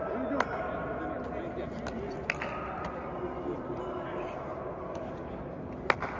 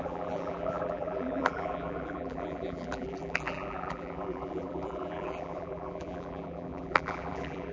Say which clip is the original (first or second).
first